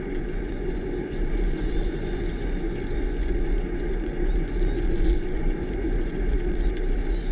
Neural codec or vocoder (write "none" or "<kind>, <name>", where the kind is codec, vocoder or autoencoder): vocoder, Vocos